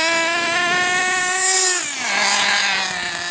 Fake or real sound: real